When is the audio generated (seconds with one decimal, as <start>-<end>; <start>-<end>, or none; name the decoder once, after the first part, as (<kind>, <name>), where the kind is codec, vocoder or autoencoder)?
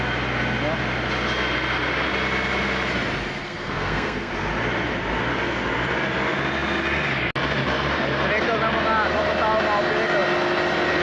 3.4-4.3 (codec, SNAC)